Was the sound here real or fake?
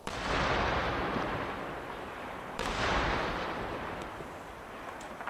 fake